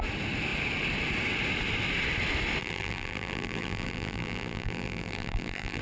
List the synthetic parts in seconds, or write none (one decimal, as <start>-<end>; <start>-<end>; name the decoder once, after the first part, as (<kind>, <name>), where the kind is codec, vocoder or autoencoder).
2.6-5.8 (vocoder, BigVGAN v2)